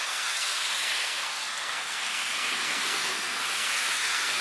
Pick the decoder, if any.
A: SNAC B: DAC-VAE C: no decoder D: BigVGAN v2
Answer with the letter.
A